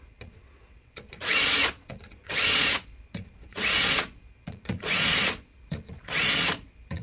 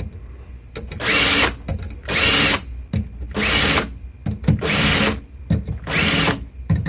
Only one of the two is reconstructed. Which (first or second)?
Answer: first